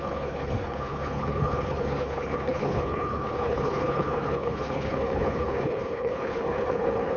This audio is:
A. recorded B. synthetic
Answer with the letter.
B